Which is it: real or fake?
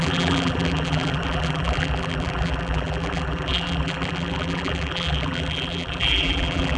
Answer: fake